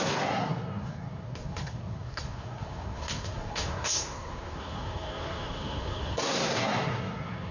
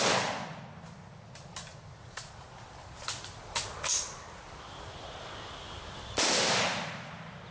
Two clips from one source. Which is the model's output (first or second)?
first